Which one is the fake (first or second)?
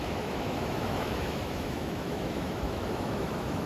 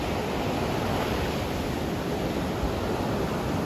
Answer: first